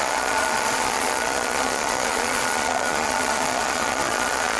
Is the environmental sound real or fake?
fake